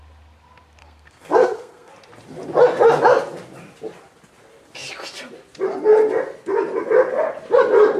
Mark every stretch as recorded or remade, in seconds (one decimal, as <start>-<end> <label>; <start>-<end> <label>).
0.0-0.8 recorded; 0.8-1.9 remade; 1.9-8.0 recorded